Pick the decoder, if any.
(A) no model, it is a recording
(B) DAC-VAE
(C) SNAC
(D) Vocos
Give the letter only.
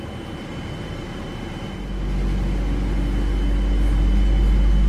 A